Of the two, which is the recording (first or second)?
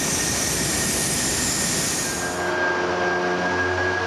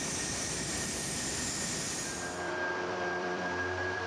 first